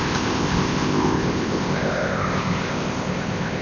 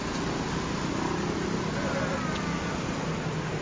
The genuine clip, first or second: second